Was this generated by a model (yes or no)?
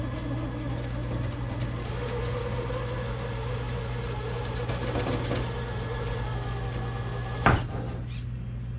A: no